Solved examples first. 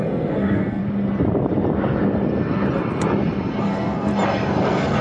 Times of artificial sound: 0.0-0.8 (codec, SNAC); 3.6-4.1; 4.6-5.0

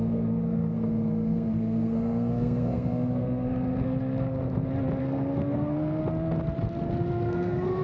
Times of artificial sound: 0.0-4.4 (codec, SNAC); 5.0-6.0; 7.0-7.8

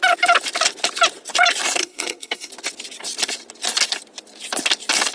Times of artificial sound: 1.8-2.5 (codec, SNAC)

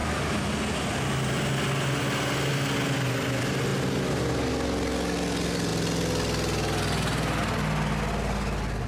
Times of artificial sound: none

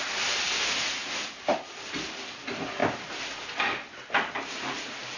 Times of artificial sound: none

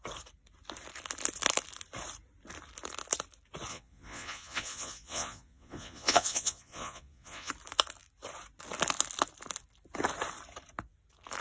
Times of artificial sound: 3.7-7.5 (vocoder, Vocos)